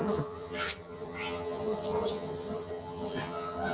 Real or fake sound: fake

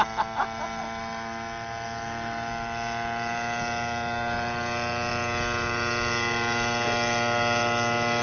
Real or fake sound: real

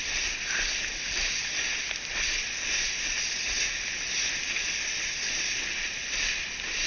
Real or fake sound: real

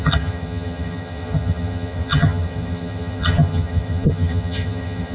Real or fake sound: fake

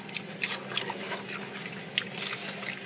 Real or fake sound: real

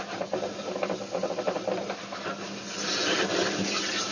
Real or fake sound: real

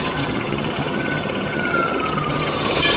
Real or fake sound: fake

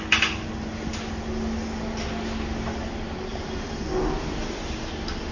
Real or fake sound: real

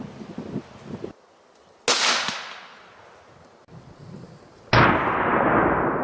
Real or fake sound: real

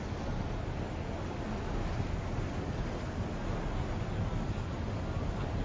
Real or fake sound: real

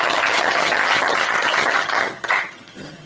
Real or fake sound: fake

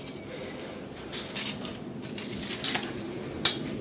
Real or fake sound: real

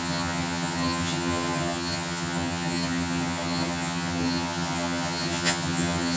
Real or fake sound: fake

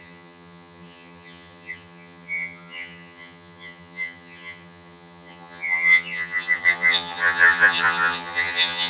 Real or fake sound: fake